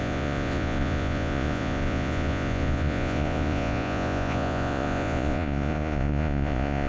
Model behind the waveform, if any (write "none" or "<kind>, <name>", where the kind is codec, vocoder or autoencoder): vocoder, Vocos